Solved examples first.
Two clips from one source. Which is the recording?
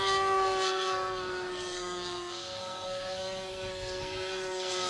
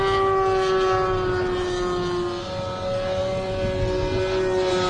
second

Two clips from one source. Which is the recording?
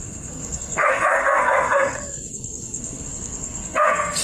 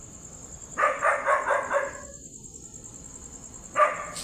second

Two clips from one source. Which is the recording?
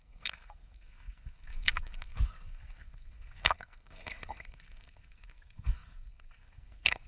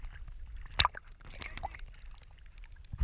second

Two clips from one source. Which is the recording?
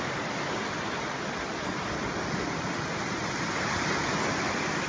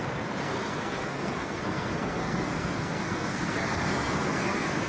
first